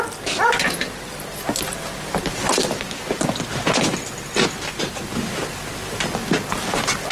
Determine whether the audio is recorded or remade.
recorded